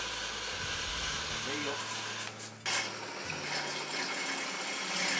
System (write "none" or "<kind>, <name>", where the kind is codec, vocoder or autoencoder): none